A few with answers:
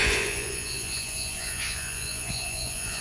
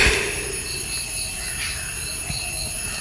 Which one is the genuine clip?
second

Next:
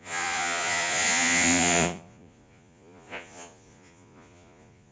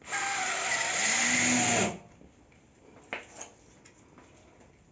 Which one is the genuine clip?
second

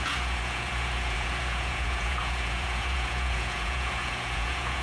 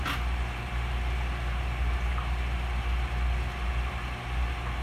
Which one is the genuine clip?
second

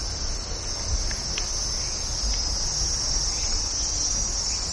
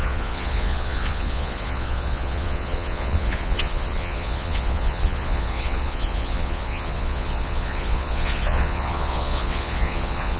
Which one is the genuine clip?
first